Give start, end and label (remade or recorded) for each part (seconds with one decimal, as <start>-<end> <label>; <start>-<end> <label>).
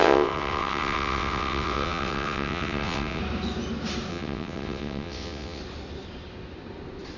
0.0-3.2 remade; 3.2-4.1 recorded; 4.1-5.6 remade; 5.6-7.2 recorded